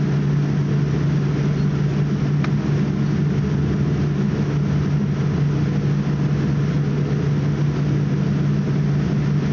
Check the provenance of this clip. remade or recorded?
recorded